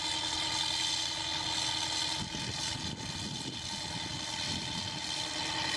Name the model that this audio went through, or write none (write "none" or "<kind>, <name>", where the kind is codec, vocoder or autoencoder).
none